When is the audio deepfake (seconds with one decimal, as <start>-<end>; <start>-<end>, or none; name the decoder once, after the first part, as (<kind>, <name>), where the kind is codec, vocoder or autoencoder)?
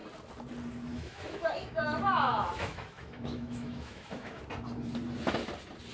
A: 0.9-4.4 (autoencoder, DAC-VAE)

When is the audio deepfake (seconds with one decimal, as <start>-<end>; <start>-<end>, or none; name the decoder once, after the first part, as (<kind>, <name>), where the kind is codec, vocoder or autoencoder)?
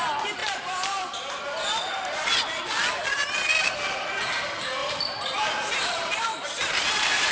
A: 0.4-1.4 (vocoder, BigVGAN v2); 4.8-7.3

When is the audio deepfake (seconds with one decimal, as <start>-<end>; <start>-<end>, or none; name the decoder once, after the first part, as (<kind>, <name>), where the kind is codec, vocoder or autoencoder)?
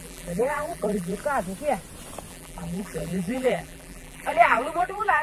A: 0.0-1.2 (vocoder, BigVGAN v2); 2.3-5.2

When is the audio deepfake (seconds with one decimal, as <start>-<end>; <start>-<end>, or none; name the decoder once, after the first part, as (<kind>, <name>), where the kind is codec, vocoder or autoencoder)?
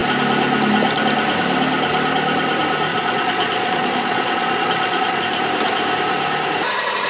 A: 2.9-5.2 (vocoder, Vocos)